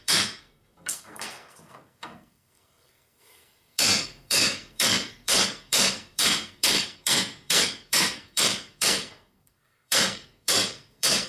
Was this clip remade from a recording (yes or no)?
yes